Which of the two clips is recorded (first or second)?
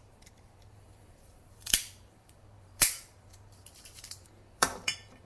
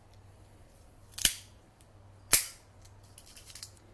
second